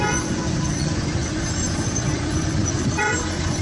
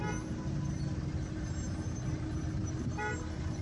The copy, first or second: first